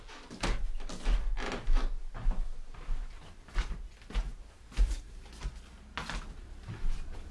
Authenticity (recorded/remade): recorded